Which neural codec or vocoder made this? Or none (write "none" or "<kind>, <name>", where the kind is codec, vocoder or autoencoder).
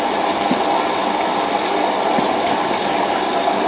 none